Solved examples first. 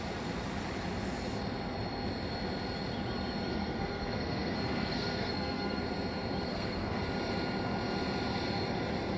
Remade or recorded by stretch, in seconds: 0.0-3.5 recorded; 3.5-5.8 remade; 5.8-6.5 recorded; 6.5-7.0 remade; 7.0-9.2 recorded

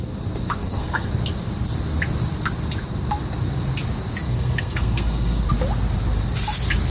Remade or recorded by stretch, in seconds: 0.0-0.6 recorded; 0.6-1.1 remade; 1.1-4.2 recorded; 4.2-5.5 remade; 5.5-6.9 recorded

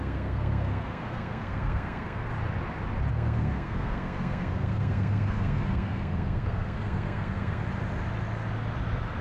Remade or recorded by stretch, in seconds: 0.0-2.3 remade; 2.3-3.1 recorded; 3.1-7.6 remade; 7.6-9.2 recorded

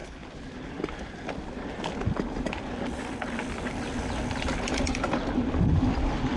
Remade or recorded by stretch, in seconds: 0.0-6.4 recorded

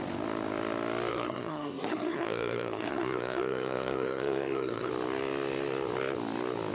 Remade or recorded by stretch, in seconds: 0.0-1.1 recorded; 1.1-4.9 remade; 4.9-6.7 recorded

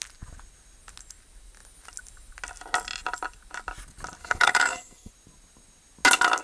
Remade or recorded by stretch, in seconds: 0.0-4.2 recorded; 4.2-5.1 remade; 5.1-6.4 recorded

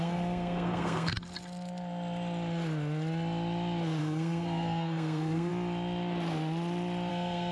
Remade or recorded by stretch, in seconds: 0.0-1.1 remade; 1.1-4.0 recorded; 4.0-5.5 remade; 5.5-7.1 recorded; 7.1-7.5 remade